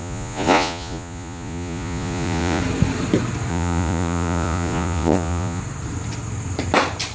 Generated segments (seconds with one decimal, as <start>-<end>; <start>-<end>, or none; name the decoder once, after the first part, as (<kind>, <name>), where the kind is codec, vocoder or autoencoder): 0.0-2.6 (vocoder, Vocos); 3.5-5.6